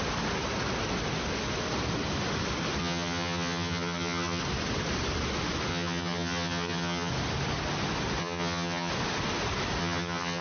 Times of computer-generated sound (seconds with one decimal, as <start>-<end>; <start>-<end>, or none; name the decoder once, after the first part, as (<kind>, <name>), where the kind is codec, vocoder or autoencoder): 2.8-4.4 (vocoder, HiFi-GAN); 5.7-7.1; 8.2-8.9; 9.8-10.4